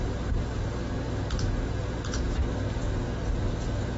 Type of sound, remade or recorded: recorded